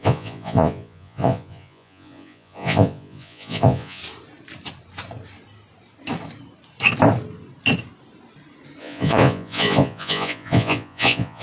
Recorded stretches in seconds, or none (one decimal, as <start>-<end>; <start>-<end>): 4.0-8.8